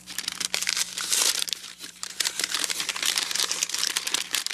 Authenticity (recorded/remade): remade